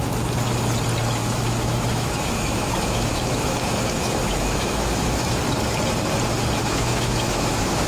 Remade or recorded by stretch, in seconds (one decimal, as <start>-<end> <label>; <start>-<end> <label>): 0.0-1.2 recorded; 1.2-5.4 remade; 5.4-6.6 recorded; 6.6-7.9 remade